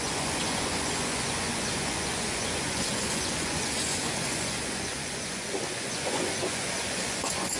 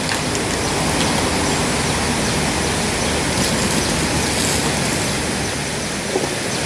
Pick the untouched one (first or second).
second